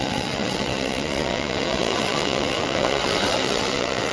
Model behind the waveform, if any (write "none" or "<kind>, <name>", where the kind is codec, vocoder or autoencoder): vocoder, WaveNeXt